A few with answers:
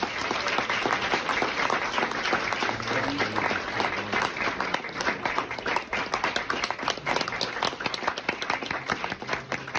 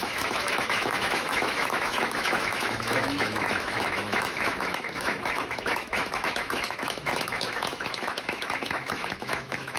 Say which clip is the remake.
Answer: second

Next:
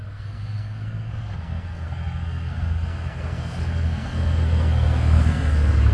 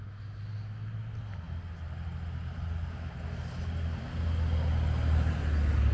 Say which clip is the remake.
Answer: first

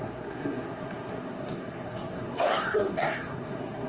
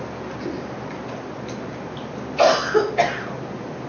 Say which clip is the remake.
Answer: first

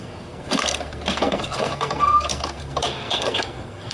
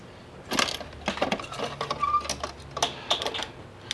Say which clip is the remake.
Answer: first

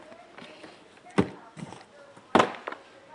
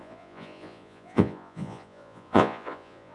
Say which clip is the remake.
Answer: second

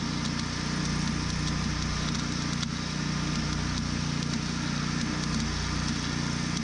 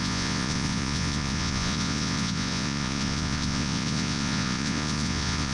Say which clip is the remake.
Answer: second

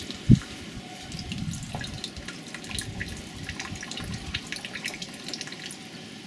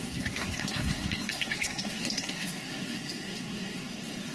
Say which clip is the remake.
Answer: second